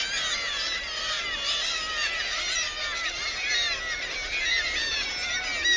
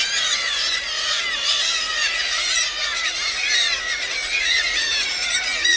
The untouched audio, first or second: first